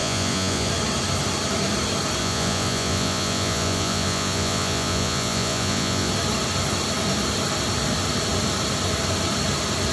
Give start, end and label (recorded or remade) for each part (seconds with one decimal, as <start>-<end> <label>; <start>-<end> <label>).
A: 0.0-0.7 remade; 0.7-2.2 recorded; 2.2-6.1 remade; 6.1-9.9 recorded